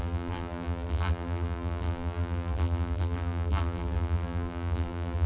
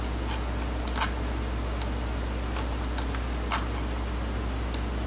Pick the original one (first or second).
second